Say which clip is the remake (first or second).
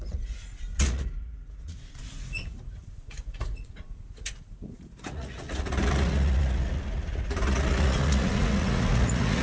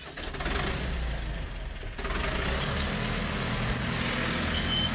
first